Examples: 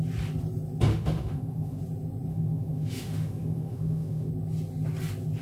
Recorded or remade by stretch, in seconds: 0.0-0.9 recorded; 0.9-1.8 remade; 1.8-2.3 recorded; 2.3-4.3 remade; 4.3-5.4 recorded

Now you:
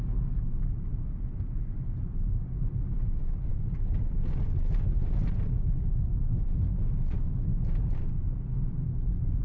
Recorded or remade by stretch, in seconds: 0.0-9.4 recorded

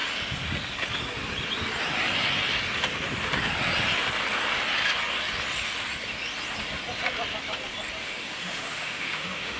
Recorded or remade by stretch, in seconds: 0.0-8.0 recorded; 8.0-9.6 remade

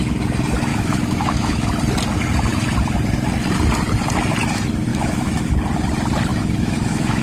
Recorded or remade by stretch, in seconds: 0.0-0.7 recorded; 0.7-1.7 remade; 1.7-4.9 recorded; 4.9-5.5 remade; 5.5-6.3 recorded; 6.3-7.2 remade

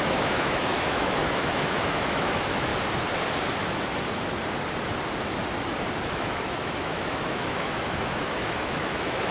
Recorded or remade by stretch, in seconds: 0.0-2.7 remade; 2.7-6.1 recorded; 6.1-9.3 remade

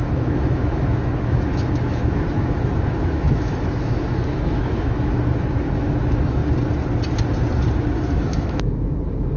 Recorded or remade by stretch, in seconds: 0.0-6.4 remade; 6.4-7.8 recorded; 7.8-9.4 remade

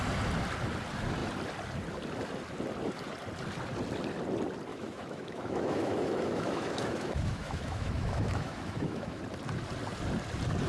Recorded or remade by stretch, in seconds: 0.0-4.7 recorded; 4.7-9.2 remade; 9.2-10.7 recorded